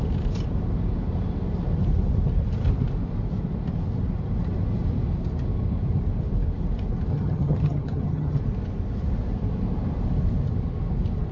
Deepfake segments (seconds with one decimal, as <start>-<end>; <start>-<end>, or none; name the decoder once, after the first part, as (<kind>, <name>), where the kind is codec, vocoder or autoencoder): 7.1-8.4 (vocoder, HiFi-GAN)